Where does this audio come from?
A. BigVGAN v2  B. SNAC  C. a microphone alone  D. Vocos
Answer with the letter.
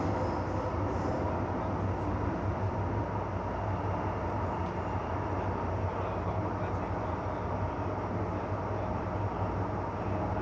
C